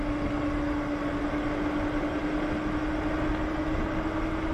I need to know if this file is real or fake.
real